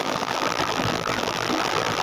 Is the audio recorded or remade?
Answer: remade